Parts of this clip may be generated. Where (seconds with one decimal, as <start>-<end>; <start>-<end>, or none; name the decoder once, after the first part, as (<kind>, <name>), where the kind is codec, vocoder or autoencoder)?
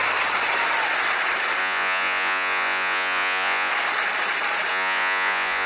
1.6-3.7 (vocoder, Vocos); 4.7-5.7